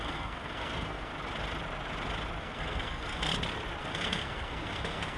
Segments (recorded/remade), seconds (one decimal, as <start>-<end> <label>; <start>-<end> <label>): 0.0-1.1 remade; 1.1-2.4 recorded; 2.4-3.3 remade; 3.3-3.8 recorded; 3.8-5.2 remade